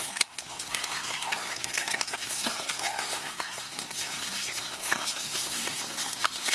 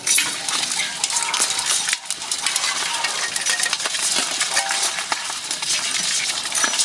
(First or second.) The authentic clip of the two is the second